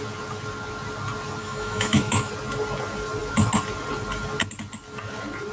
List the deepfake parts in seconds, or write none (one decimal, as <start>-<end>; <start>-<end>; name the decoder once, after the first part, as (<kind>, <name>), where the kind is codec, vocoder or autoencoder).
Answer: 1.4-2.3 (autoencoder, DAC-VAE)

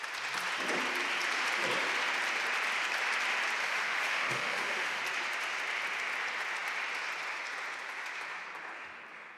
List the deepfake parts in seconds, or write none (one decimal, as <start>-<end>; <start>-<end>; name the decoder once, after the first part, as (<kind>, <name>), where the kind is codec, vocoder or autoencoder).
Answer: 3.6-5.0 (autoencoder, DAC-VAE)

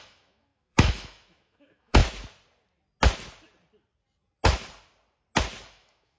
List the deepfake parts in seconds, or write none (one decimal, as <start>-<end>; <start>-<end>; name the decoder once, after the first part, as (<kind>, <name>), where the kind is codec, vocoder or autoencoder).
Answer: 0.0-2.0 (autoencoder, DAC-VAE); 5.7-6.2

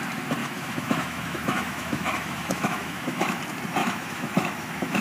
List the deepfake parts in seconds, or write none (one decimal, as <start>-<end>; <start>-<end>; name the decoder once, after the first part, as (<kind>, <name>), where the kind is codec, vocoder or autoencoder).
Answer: 0.4-3.4 (autoencoder, DAC-VAE); 3.8-5.0